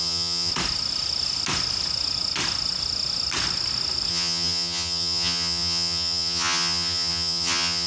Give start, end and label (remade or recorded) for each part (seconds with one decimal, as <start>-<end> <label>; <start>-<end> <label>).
0.0-0.5 remade; 0.5-4.1 recorded; 4.1-7.9 remade